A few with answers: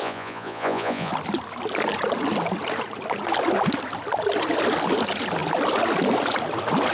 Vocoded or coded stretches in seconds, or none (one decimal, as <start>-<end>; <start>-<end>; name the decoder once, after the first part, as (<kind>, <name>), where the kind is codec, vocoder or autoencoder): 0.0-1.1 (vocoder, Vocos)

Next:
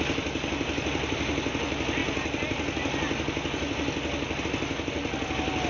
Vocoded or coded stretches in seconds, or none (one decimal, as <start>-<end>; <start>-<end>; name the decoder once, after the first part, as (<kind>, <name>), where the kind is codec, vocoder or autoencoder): none

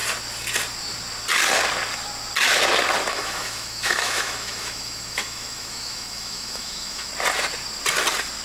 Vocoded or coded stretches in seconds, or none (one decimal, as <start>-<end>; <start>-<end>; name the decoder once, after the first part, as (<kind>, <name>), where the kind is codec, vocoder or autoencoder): 3.1-7.1 (autoencoder, DAC-VAE)

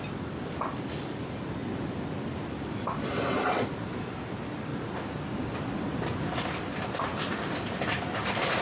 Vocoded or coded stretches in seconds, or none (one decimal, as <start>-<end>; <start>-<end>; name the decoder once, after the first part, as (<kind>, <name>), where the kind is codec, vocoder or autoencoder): 0.0-4.7 (vocoder, BigVGAN v2); 5.3-8.6